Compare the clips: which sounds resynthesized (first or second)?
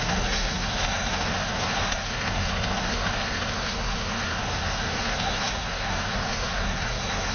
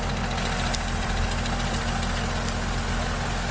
first